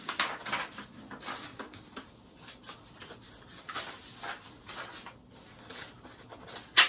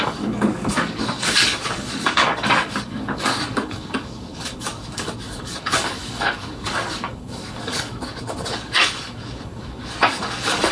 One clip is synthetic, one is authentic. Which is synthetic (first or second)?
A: second